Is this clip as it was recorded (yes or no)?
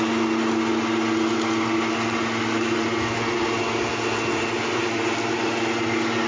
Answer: yes